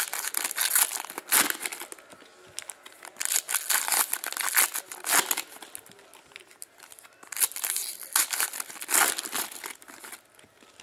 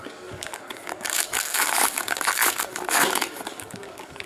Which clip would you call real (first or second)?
first